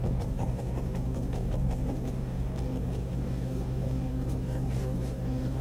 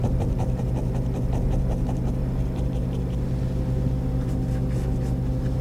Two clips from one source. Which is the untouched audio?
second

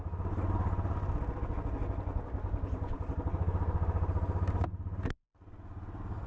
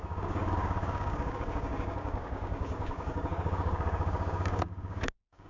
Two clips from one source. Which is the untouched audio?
first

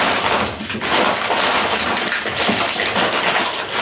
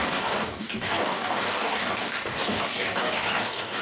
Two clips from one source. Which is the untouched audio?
first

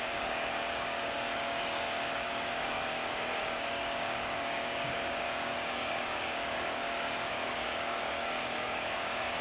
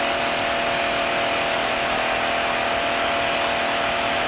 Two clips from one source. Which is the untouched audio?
second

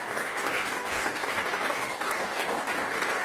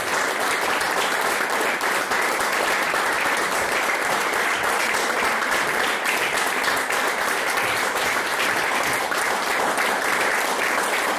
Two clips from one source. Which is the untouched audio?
second